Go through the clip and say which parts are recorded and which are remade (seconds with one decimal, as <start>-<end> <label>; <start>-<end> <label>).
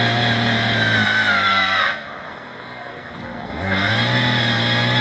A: 0.0-1.5 recorded; 1.5-3.9 remade; 3.9-5.0 recorded